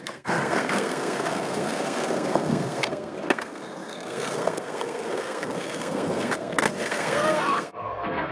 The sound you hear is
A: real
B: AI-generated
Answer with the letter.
B